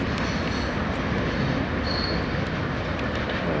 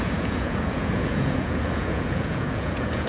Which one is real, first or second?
first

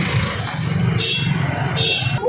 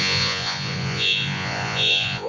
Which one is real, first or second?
first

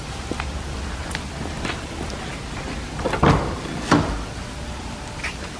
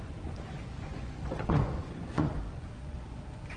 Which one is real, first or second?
first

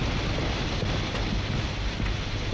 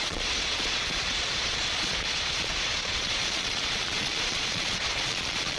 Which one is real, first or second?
first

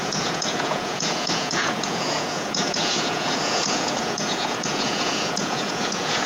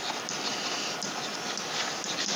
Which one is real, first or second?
second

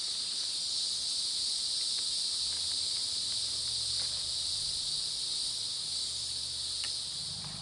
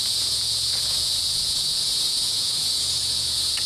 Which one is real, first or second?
first